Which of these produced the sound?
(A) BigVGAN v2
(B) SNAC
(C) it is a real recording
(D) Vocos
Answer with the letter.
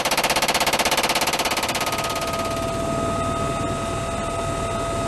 C